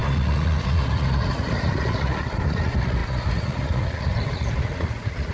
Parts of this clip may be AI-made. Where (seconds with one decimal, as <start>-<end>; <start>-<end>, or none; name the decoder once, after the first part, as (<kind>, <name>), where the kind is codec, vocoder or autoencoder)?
0.0-5.3 (vocoder, Vocos)